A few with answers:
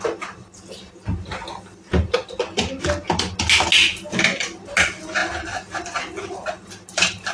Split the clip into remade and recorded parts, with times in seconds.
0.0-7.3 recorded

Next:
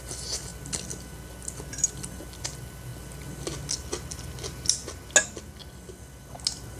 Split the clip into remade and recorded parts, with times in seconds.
0.0-6.8 recorded

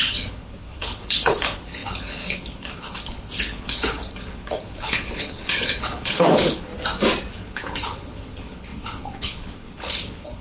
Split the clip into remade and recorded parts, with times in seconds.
0.0-6.7 remade; 6.7-7.3 recorded; 7.3-10.4 remade